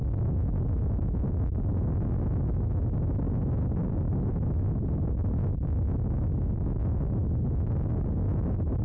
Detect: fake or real real